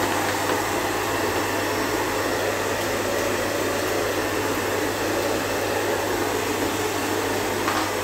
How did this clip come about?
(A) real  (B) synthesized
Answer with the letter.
A